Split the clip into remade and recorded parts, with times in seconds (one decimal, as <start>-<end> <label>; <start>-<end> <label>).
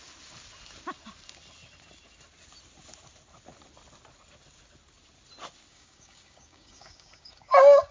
0.0-5.7 recorded; 5.7-7.9 remade